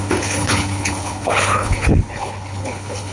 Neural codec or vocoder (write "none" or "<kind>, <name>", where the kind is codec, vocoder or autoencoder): codec, HILCodec